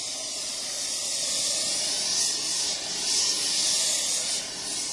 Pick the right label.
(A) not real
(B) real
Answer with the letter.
B